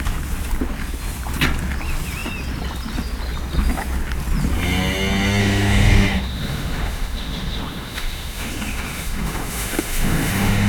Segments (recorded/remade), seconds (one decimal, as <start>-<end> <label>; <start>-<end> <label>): 0.0-5.4 recorded; 5.4-10.7 remade